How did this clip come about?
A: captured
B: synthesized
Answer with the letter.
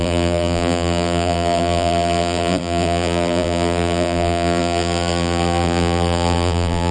B